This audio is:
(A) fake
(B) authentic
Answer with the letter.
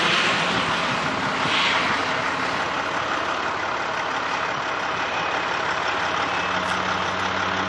B